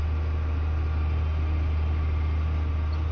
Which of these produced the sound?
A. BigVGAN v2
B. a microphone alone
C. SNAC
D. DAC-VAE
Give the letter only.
B